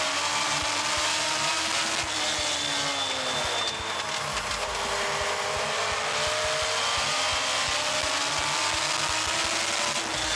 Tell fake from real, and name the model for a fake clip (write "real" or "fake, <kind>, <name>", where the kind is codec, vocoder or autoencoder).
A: real